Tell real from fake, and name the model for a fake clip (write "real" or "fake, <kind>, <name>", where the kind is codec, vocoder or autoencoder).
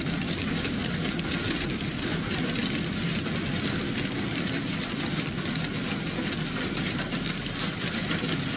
real